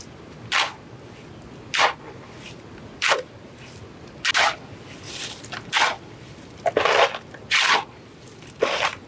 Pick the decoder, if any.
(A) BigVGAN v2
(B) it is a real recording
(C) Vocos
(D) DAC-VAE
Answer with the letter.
B